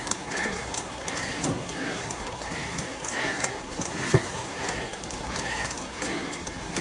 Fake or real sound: fake